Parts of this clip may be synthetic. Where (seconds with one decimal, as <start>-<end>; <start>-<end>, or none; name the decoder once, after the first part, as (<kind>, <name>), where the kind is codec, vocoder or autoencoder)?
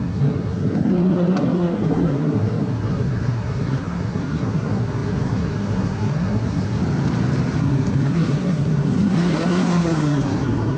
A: 0.0-6.8 (codec, SNAC); 7.6-10.8